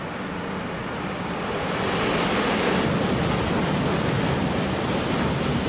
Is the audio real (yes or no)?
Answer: yes